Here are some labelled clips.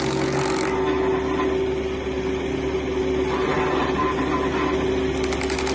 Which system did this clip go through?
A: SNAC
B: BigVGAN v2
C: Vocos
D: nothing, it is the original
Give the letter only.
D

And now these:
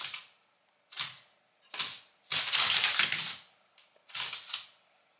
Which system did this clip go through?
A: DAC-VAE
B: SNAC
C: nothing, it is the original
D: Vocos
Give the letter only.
C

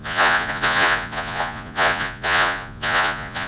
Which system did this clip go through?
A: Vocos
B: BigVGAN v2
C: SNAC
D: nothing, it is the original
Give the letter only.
A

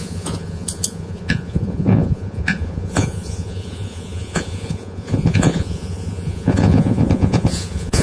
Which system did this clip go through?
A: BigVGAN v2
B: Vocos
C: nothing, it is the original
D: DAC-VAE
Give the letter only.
B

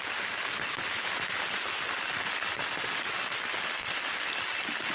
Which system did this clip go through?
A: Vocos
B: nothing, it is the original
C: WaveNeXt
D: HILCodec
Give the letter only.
B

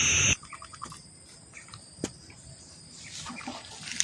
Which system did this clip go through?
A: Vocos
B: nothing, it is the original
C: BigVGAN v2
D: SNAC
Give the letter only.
B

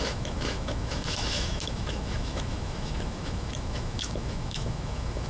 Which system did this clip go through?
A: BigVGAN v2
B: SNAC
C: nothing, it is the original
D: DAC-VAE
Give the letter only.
D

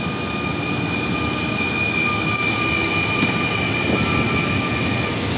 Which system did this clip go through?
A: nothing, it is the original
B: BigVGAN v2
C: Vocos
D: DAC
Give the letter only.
A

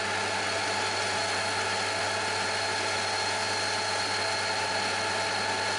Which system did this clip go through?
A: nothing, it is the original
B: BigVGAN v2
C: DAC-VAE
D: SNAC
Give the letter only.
A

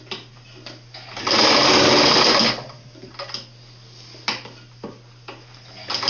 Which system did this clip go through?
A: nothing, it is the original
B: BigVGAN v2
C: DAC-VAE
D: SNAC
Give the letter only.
A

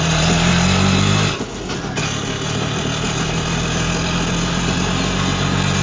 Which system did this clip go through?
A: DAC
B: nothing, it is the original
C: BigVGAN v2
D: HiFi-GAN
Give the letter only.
B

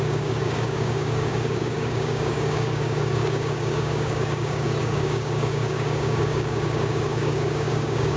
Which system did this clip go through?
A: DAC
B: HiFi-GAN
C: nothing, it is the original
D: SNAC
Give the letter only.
A